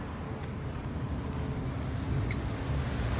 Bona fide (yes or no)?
yes